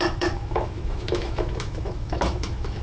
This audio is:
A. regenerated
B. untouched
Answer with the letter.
A